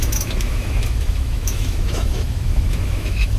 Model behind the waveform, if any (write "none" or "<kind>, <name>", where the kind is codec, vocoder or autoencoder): autoencoder, DAC-VAE